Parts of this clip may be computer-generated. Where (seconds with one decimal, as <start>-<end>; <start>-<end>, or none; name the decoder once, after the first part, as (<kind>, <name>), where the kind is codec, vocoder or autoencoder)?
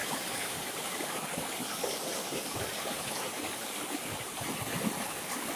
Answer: 0.0-4.3 (codec, DAC); 5.0-5.6